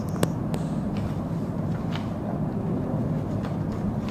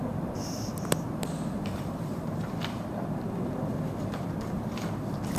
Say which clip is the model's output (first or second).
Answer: second